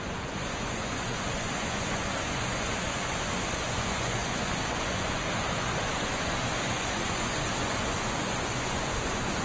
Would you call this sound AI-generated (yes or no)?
yes